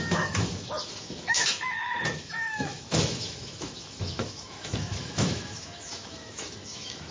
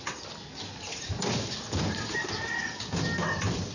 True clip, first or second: second